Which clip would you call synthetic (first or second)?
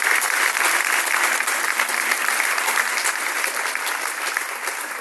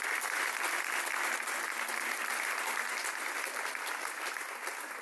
first